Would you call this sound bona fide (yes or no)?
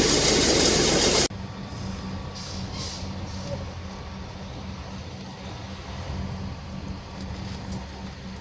yes